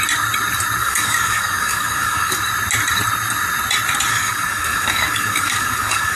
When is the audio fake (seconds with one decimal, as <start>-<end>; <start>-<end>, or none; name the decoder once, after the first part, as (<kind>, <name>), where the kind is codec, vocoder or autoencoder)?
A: 0.8-2.4 (codec, DAC); 4.1-6.2